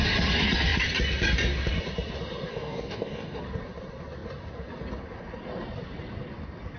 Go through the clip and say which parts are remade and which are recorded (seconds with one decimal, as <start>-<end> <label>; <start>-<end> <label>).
0.0-2.5 recorded; 2.5-3.4 remade; 3.4-6.8 recorded

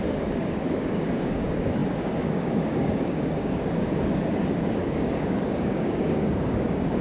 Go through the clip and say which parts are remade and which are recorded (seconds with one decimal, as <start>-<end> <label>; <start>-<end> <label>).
0.0-7.0 remade

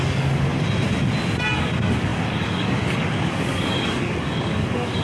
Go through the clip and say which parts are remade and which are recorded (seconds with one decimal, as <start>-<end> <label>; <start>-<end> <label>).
0.0-0.5 remade; 0.5-1.6 recorded; 1.6-5.0 remade

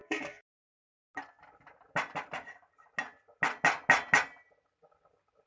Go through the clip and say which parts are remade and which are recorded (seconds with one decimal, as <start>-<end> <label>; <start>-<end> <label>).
0.0-0.7 remade; 0.7-5.5 recorded

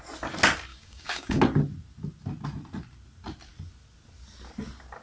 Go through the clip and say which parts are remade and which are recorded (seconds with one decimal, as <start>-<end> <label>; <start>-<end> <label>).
0.0-0.7 recorded; 0.7-1.4 remade; 1.4-5.0 recorded

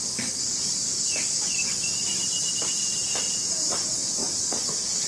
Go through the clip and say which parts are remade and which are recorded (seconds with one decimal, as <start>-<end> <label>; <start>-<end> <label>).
0.0-2.1 remade; 2.1-3.5 recorded; 3.5-5.1 remade

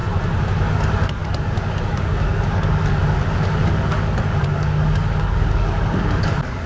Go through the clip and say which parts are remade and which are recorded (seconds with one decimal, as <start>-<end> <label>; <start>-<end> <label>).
0.0-0.7 recorded; 0.7-6.7 remade